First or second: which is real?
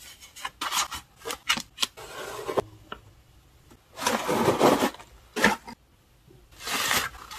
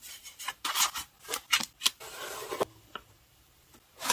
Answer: first